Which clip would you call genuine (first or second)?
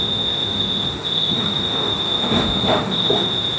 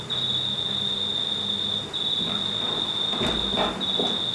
second